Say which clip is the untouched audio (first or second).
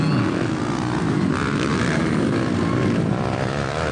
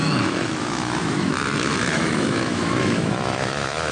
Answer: first